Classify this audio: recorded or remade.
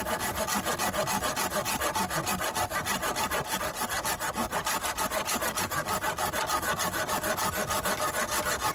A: recorded